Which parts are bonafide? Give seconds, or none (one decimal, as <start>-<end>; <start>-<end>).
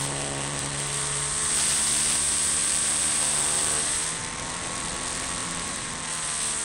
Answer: 0.6-2.6; 3.8-5.4; 5.9-6.6